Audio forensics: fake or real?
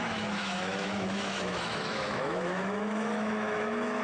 fake